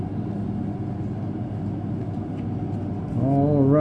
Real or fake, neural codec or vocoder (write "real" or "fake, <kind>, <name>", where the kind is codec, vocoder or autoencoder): real